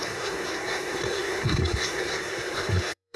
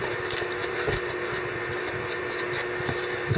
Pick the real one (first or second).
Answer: second